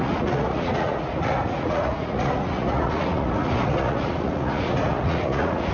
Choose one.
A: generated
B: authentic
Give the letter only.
A